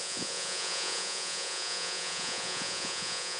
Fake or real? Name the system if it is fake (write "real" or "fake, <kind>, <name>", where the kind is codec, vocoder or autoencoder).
fake, vocoder, Vocos